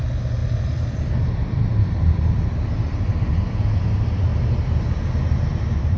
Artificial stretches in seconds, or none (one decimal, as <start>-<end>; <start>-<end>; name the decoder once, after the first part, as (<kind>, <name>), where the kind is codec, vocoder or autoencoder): none